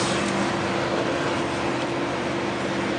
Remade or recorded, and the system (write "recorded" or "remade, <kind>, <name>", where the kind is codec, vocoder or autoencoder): recorded